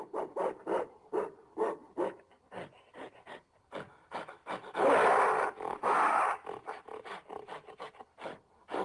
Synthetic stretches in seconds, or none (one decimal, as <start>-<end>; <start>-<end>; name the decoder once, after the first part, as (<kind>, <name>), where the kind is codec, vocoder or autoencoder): 5.7-6.2 (autoencoder, DAC-VAE)